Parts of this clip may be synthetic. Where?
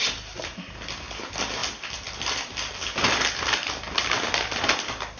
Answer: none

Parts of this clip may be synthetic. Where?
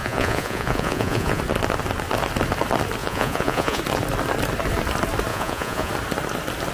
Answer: 0.0-1.4 (vocoder, Vocos); 3.0-3.8; 5.3-5.9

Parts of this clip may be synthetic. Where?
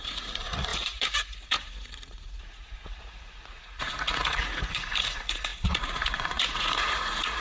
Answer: 0.0-7.4 (vocoder, Vocos)